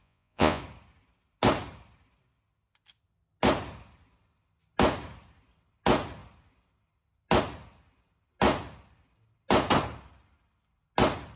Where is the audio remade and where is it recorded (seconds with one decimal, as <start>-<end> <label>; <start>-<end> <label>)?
0.0-0.6 remade; 0.6-11.4 recorded